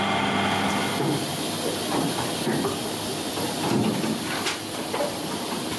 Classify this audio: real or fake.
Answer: real